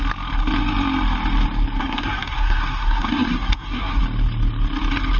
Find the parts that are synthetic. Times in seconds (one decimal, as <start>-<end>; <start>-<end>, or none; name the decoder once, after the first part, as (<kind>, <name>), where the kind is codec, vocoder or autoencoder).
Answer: 1.8-4.0 (codec, SNAC)